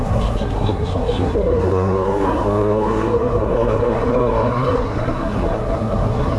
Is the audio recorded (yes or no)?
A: no